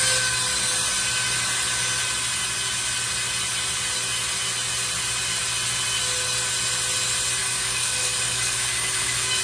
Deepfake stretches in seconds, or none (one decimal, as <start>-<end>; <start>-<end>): 7.4-9.4